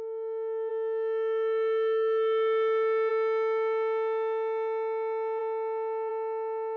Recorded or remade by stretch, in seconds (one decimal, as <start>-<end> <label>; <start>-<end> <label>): 0.0-6.8 recorded